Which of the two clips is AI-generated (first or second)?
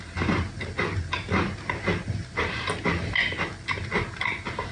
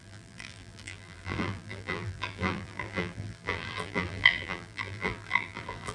second